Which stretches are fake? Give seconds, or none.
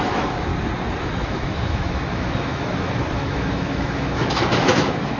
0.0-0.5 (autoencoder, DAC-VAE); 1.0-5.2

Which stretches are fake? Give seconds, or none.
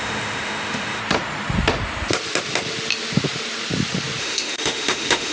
0.0-1.0 (autoencoder, DAC-VAE); 4.2-5.3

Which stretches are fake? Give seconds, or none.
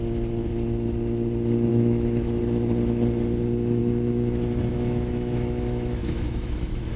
1.7-2.4 (autoencoder, DAC-VAE); 3.8-7.0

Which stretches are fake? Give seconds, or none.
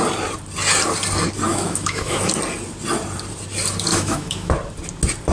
1.5-2.3 (autoencoder, DAC-VAE); 3.9-4.5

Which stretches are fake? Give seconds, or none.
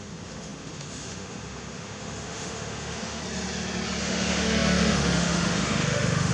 0.0-3.2 (autoencoder, DAC-VAE); 4.0-6.3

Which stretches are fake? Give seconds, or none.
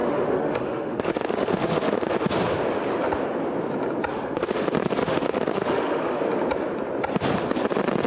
0.0-2.3 (autoencoder, DAC-VAE); 4.1-4.6; 5.0-6.2